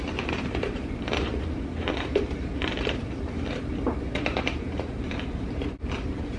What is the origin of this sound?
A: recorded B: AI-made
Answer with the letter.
B